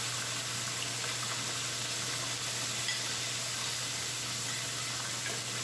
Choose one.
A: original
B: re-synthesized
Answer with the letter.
A